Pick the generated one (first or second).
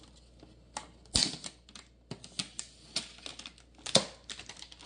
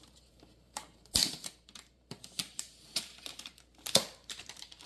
second